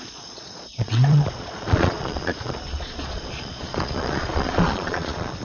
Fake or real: fake